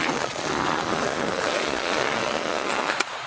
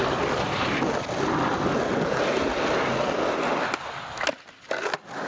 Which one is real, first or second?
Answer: second